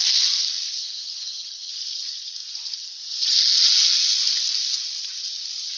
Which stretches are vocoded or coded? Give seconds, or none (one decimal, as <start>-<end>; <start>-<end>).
0.8-1.7